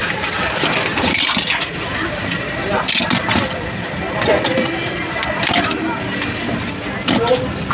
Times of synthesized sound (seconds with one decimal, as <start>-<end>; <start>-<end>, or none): none